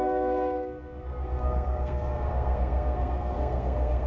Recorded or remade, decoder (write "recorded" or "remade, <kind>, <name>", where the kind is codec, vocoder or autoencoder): remade, codec, SNAC